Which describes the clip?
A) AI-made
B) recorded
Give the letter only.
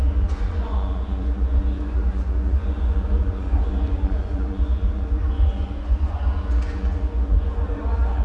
A